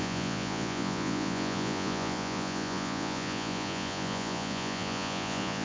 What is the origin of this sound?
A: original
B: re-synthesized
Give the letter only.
B